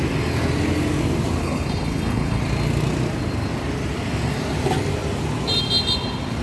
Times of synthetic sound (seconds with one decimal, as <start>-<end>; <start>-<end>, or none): 1.4-2.4